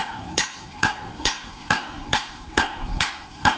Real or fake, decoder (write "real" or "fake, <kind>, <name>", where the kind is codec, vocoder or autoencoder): fake, codec, SNAC